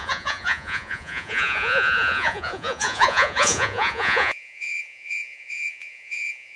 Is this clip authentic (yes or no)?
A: no